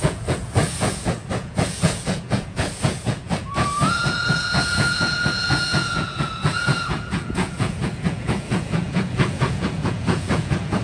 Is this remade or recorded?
remade